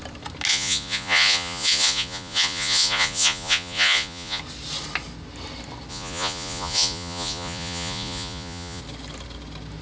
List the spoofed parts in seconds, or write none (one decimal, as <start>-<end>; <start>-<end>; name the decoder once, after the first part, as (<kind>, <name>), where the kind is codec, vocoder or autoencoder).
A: 0.5-4.4 (vocoder, Vocos); 5.9-8.8